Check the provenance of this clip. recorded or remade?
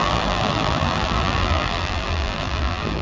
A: remade